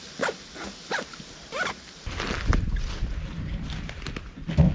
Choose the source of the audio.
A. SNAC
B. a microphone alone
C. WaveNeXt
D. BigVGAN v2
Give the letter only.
B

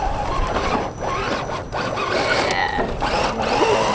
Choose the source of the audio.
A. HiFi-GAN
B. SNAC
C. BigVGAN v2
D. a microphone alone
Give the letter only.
D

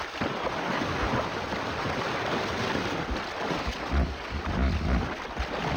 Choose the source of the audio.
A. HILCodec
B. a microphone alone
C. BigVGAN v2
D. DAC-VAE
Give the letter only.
B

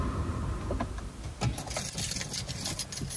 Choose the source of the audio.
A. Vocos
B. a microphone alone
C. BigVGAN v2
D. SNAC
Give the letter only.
B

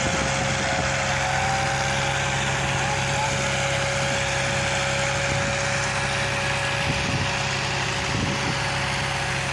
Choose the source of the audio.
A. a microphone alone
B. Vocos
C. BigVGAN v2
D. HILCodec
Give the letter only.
A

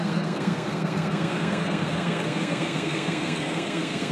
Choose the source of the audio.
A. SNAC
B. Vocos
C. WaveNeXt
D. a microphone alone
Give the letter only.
A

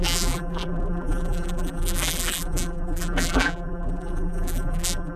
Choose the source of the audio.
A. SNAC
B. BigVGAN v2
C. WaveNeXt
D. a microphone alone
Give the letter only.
B